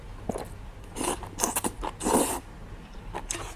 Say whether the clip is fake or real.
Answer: real